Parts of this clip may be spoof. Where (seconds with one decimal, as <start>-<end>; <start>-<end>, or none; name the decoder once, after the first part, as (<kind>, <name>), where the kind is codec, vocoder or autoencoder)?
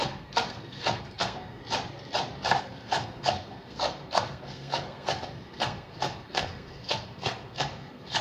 0.0-1.6 (codec, SNAC); 2.6-8.2